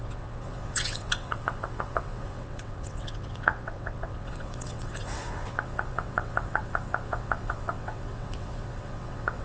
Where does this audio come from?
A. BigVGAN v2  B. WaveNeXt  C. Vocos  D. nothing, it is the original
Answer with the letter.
B